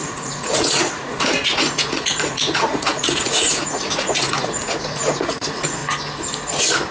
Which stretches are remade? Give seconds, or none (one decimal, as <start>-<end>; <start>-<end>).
0.0-5.8

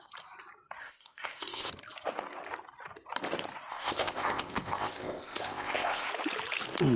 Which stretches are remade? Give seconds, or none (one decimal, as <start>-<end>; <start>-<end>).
0.8-1.7; 3.7-6.1

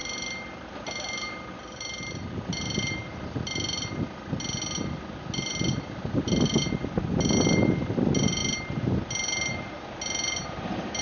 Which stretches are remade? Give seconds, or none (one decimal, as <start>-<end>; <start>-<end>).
none

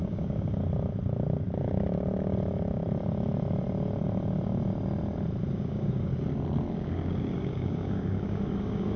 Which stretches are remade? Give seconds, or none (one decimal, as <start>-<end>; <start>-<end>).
0.0-0.6; 5.5-6.1; 6.7-9.0